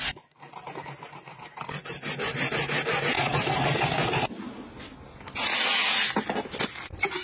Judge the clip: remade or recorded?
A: recorded